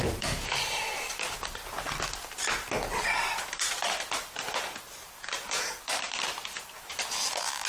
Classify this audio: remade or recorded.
remade